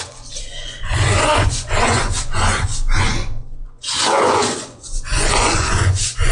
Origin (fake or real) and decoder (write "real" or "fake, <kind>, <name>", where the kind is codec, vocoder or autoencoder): fake, vocoder, Vocos